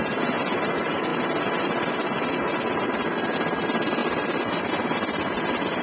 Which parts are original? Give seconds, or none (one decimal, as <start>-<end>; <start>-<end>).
0.0-4.0; 4.7-5.8